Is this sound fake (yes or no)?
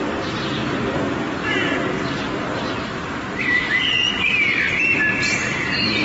yes